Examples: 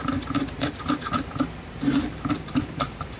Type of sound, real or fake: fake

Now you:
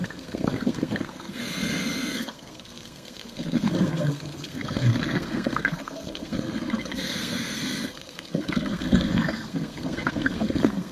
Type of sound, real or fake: fake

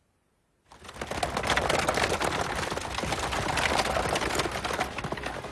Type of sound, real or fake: real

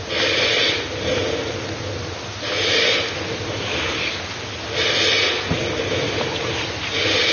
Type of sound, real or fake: real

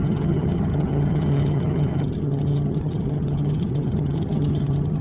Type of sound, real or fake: fake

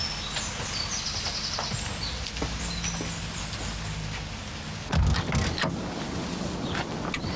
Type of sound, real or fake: real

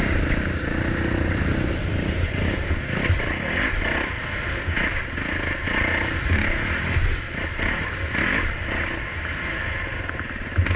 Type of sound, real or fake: real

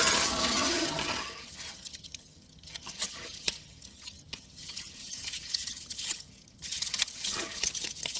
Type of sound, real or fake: fake